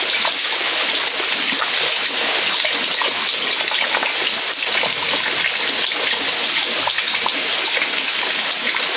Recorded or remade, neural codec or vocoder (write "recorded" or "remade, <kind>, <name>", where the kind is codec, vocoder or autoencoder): recorded